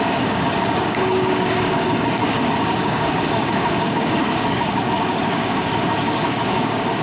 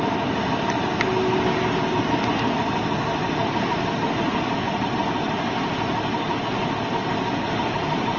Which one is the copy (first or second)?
first